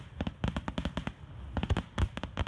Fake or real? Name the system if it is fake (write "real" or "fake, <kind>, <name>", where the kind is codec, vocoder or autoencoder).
real